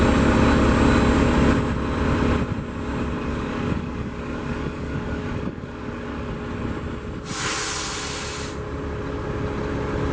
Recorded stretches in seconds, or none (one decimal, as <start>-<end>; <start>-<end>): 0.0-3.3; 6.3-10.1